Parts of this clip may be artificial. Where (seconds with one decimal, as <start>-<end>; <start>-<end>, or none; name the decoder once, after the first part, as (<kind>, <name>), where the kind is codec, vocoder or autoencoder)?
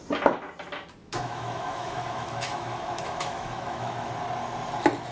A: 1.0-4.1 (autoencoder, DAC-VAE)